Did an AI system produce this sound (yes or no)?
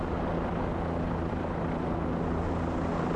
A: no